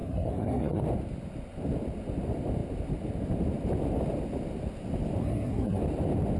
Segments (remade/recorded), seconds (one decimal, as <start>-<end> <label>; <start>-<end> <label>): 0.0-0.8 remade; 0.8-5.2 recorded; 5.2-5.8 remade; 5.8-6.4 recorded